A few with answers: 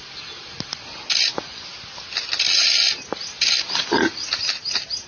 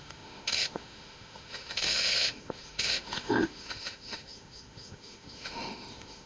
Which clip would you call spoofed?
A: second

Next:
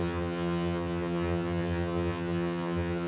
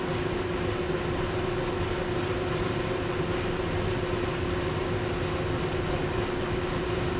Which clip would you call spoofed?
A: first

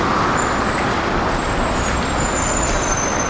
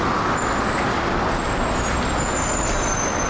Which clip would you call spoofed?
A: first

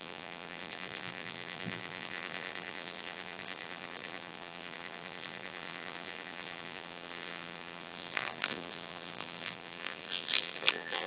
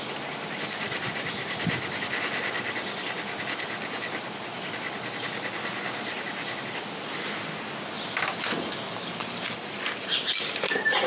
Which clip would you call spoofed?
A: first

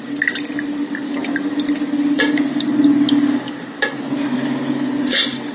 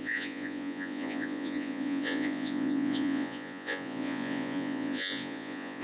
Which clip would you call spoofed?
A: second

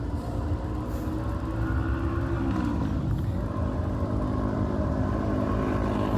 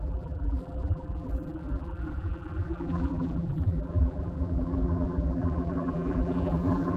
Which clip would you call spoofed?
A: second